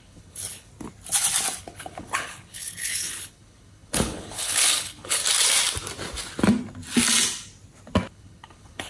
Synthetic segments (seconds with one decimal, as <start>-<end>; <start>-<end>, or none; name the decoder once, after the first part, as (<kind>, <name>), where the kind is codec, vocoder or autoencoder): 0.0-0.7 (codec, HILCodec); 1.6-5.2; 8.1-8.9